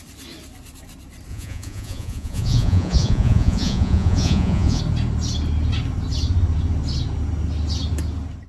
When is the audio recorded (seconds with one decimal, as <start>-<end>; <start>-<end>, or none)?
0.0-1.3; 4.8-8.5